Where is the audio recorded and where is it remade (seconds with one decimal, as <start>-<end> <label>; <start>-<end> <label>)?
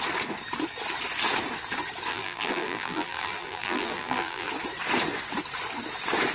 0.0-2.1 recorded; 2.1-4.5 remade; 4.5-6.3 recorded